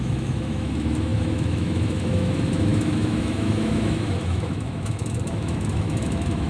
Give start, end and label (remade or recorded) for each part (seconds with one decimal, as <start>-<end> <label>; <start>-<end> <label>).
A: 0.0-6.5 remade